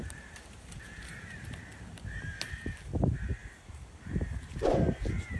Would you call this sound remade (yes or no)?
yes